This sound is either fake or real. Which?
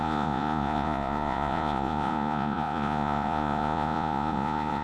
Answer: fake